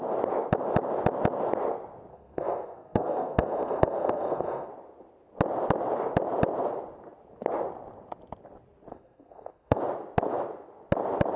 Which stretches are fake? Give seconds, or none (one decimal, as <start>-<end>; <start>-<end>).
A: 2.1-4.7; 8.9-9.8